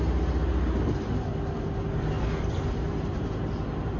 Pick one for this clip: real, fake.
real